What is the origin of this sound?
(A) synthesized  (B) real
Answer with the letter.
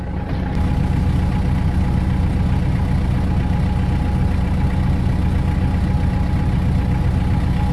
B